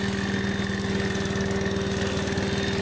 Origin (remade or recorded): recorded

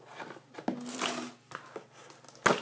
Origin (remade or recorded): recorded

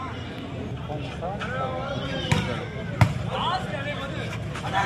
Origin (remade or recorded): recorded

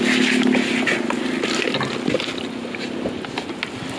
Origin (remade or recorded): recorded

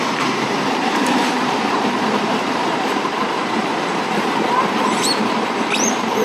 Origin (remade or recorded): remade